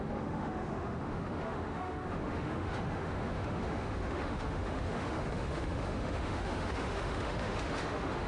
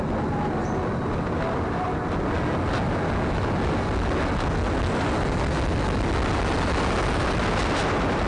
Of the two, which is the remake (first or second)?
first